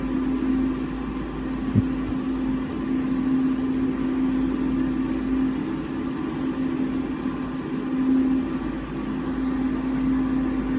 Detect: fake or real real